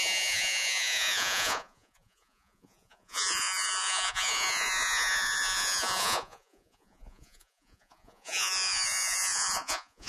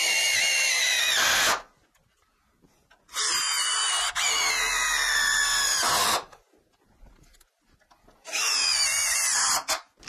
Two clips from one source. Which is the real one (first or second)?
second